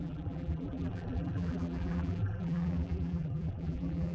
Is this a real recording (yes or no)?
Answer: no